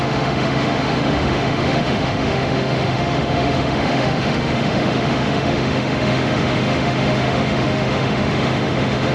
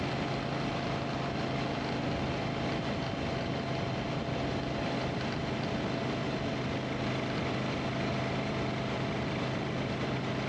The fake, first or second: first